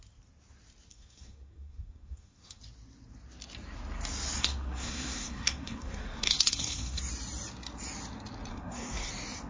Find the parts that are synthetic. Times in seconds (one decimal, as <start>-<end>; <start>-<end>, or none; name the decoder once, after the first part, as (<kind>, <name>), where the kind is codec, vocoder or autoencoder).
0.9-2.6 (codec, SNAC); 4.4-7.0; 8.5-9.1